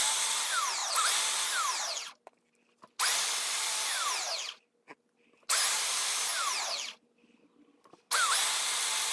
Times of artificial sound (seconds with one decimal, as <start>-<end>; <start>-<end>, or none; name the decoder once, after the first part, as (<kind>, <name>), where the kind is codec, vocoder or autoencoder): none